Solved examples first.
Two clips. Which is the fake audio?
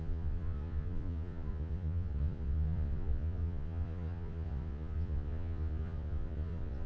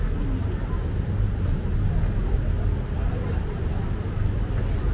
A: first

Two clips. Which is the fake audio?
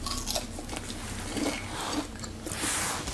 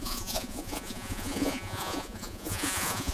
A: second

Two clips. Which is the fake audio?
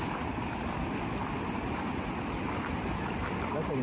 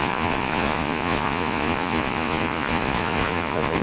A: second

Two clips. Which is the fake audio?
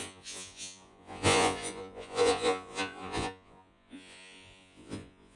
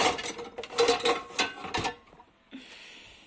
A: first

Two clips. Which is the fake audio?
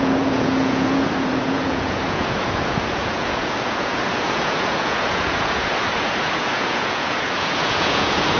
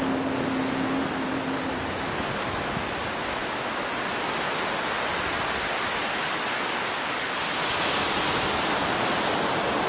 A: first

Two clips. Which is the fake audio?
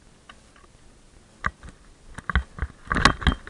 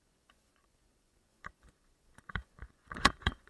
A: second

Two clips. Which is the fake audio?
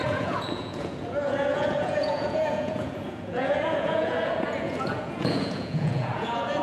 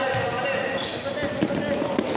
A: first